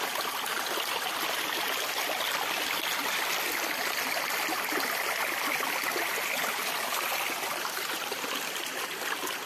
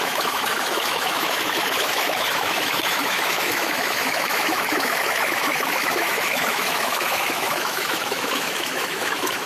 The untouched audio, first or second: first